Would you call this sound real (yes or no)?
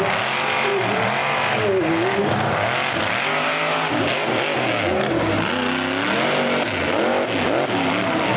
yes